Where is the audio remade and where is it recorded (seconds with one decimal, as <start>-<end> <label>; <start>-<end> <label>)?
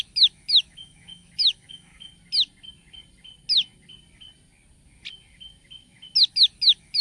0.0-2.1 remade; 2.1-6.3 recorded; 6.3-7.0 remade